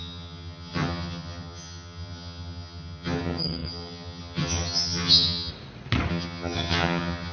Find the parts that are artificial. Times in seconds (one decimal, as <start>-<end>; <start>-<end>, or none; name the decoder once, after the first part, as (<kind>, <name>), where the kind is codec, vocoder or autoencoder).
0.0-5.5 (vocoder, HiFi-GAN); 6.1-7.3